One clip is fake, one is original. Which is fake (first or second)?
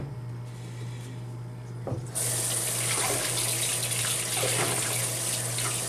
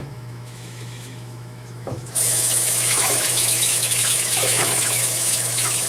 second